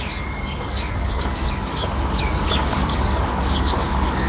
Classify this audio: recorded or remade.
remade